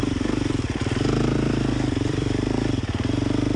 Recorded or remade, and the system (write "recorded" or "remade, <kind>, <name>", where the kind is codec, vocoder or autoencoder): remade, vocoder, BigVGAN v2